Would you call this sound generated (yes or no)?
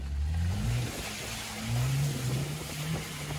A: no